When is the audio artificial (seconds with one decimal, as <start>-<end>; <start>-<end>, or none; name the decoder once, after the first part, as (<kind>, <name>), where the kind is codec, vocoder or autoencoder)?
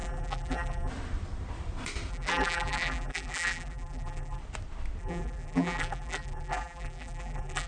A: 0.0-0.9 (vocoder, BigVGAN v2); 2.1-4.4; 5.0-7.7